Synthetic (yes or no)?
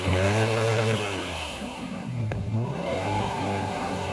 yes